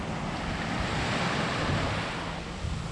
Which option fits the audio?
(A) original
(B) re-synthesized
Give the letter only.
A